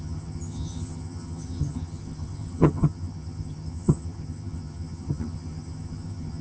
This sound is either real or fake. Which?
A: fake